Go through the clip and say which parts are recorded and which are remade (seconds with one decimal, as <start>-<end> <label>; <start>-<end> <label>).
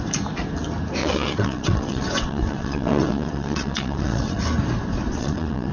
0.0-1.0 recorded; 1.0-4.4 remade; 4.4-5.1 recorded; 5.1-5.7 remade